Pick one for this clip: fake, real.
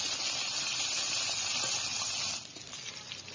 real